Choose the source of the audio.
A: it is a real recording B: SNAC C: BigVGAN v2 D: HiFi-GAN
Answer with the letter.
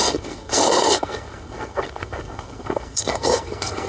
B